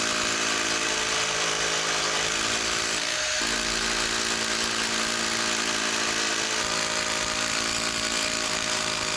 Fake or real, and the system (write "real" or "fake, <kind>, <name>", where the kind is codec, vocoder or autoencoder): real